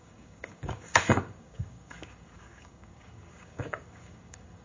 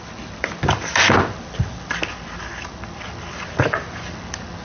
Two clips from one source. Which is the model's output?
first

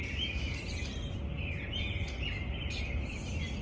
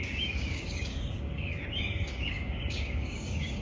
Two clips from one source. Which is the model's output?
second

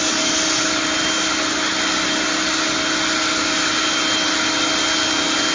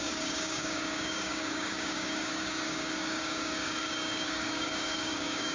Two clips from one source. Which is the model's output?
second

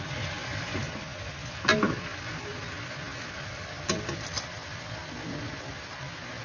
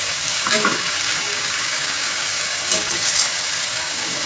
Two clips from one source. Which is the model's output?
second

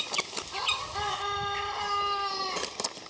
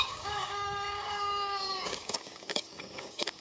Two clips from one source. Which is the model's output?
second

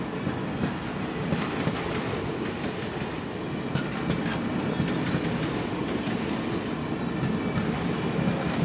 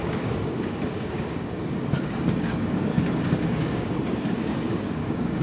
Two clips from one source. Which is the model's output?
second